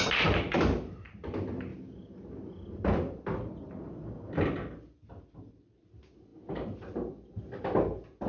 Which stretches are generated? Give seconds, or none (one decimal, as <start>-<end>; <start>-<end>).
1.7-4.4